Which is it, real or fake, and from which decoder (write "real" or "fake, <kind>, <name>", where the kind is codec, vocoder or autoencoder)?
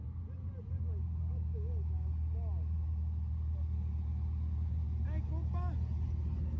real